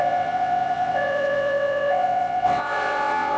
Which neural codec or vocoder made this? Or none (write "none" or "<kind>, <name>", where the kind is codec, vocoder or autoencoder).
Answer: vocoder, WaveNeXt